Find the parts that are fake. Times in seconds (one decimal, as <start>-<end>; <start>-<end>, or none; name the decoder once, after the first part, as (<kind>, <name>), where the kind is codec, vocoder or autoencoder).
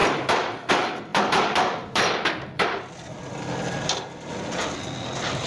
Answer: 0.0-0.7 (vocoder, BigVGAN v2); 1.1-3.2